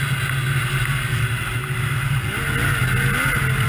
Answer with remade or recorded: recorded